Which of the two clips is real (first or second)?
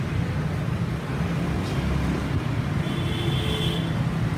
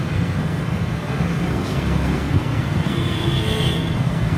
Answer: first